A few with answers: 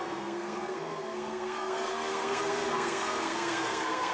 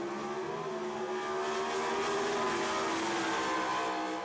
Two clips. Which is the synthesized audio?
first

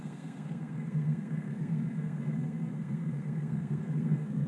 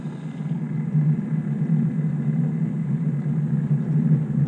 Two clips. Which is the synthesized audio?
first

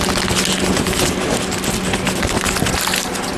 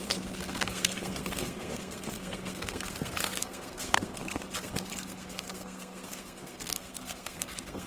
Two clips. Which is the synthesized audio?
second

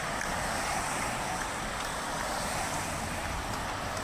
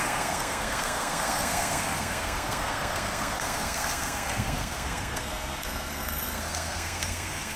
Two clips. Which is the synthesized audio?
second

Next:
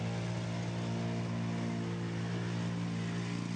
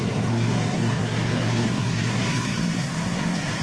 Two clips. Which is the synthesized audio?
second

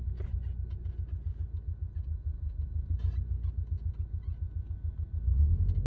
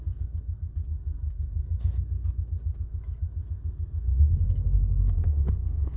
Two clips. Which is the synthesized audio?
second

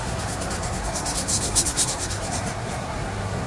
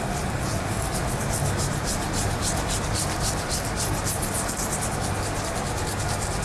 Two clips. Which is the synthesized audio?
first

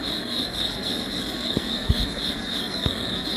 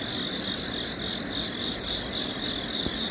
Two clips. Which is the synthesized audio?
first